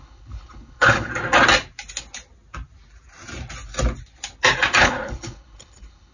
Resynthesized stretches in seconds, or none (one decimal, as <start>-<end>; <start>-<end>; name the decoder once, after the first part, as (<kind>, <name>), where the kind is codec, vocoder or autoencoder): 0.0-1.1 (codec, HILCodec); 4.8-6.1